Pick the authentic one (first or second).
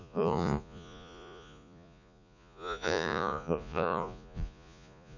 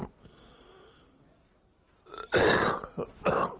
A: second